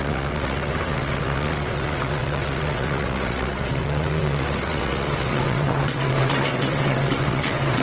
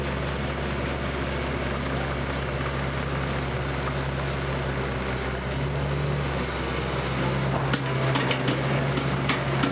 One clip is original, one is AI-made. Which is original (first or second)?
second